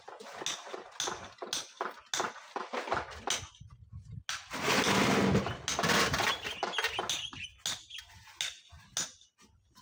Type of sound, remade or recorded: recorded